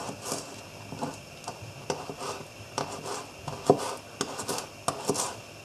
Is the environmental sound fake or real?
real